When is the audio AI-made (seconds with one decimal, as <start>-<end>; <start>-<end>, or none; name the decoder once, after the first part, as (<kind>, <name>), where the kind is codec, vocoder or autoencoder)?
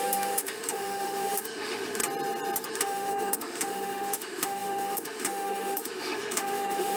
0.0-2.0 (autoencoder, DAC-VAE); 2.7-7.0